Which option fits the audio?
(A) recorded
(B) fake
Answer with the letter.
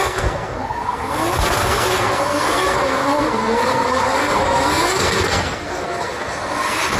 B